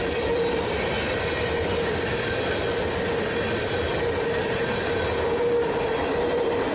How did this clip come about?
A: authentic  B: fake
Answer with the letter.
A